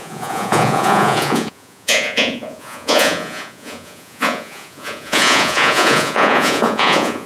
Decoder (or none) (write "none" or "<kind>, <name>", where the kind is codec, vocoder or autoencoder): vocoder, Vocos